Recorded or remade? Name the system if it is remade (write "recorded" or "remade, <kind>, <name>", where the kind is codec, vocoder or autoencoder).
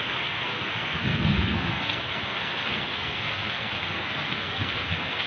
remade, codec, SNAC